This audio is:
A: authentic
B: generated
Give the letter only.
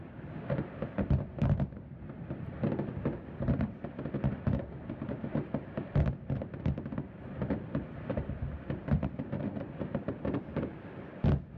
A